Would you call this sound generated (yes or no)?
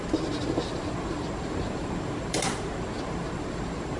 no